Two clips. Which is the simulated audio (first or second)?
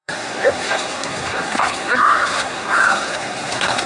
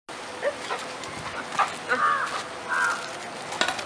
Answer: first